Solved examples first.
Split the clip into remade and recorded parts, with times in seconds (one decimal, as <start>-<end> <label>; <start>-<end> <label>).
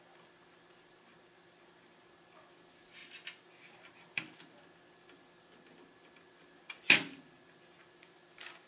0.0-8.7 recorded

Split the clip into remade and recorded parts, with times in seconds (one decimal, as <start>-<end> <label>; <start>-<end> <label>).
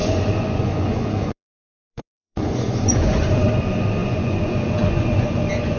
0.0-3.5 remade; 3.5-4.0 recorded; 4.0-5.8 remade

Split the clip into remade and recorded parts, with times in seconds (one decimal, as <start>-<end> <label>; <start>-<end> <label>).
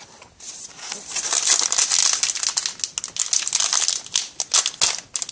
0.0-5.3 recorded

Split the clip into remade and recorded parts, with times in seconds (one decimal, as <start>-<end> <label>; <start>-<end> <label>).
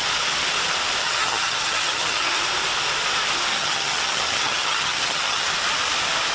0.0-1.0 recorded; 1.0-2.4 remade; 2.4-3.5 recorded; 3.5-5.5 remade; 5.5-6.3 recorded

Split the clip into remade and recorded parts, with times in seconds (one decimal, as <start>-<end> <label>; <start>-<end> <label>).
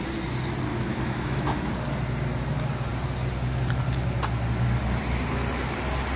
0.0-0.7 recorded; 0.7-1.7 remade; 1.7-6.2 recorded